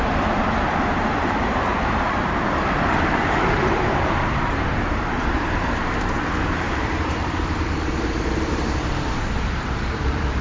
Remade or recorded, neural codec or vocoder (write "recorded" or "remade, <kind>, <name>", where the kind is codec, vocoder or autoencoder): remade, vocoder, BigVGAN v2